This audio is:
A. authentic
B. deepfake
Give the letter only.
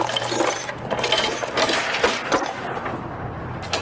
A